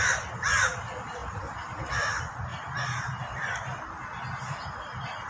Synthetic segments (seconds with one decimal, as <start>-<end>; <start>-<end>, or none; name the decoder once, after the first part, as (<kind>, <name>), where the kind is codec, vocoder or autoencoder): 1.2-1.8 (vocoder, BigVGAN v2); 2.5-4.2